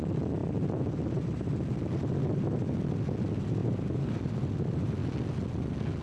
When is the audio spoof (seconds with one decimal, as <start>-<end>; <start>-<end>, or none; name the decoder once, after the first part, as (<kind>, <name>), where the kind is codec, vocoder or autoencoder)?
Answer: 0.4-1.5 (vocoder, BigVGAN v2); 3.6-4.1